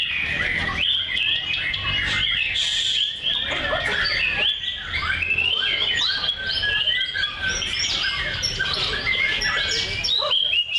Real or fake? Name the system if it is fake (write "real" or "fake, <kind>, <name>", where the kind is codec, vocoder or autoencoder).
real